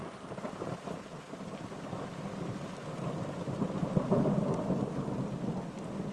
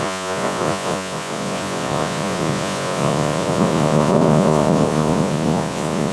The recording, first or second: first